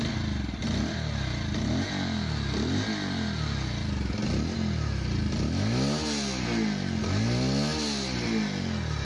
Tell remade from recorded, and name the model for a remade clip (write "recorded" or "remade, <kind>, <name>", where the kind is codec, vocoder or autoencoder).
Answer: recorded